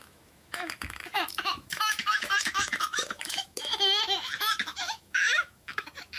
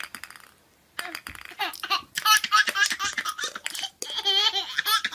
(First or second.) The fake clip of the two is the first